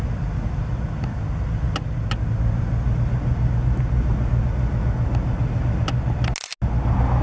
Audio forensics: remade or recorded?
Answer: recorded